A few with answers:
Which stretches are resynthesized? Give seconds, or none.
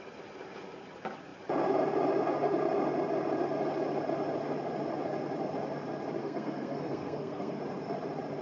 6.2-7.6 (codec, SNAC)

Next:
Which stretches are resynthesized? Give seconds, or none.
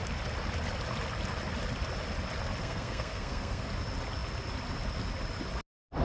2.6-3.7 (codec, SNAC)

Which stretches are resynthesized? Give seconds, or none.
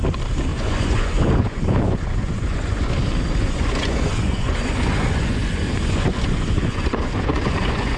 0.5-2.9 (vocoder, Vocos); 3.4-8.0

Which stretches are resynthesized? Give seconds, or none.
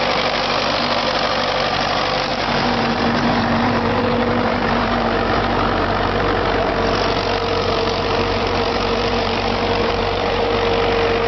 2.3-6.7 (vocoder, BigVGAN v2); 7.5-10.5